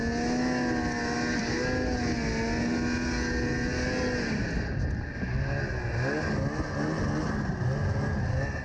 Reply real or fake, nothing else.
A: real